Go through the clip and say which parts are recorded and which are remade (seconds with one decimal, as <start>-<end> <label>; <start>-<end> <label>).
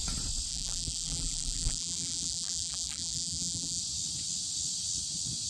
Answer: 0.0-0.5 recorded; 0.5-3.8 remade; 3.8-5.5 recorded